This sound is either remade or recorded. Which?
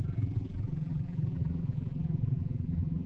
remade